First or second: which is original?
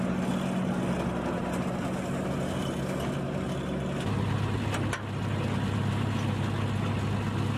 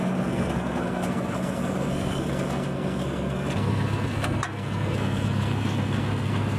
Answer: first